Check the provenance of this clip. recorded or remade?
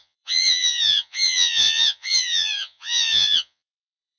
remade